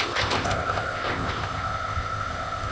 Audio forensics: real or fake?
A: fake